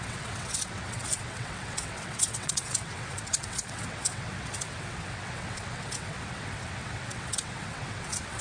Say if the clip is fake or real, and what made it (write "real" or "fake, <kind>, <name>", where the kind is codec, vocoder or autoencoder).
fake, vocoder, WaveNeXt